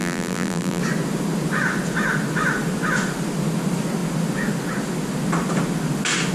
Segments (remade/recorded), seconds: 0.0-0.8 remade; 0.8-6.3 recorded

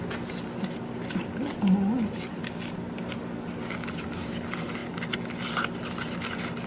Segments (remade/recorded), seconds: 0.0-6.7 recorded

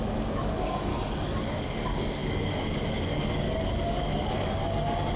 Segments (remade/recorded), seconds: 0.0-0.9 remade; 0.9-1.4 recorded; 1.4-5.2 remade

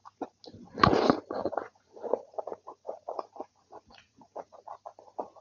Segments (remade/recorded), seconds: 0.0-1.4 recorded; 1.4-4.6 remade; 4.6-5.4 recorded

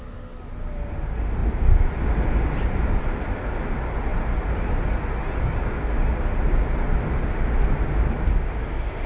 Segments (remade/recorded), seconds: 0.0-9.1 recorded

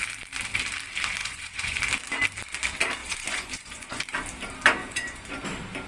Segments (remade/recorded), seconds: 0.0-1.2 recorded; 1.2-1.8 remade; 1.8-3.0 recorded; 3.0-4.0 remade; 4.0-4.8 recorded; 4.8-5.4 remade; 5.4-5.9 recorded